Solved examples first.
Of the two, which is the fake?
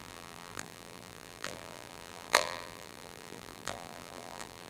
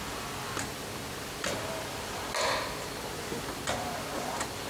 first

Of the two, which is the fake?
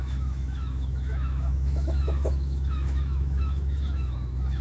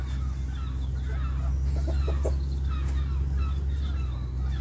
first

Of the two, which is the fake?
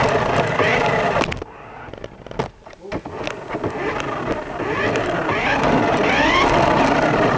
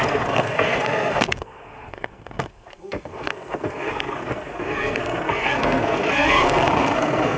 second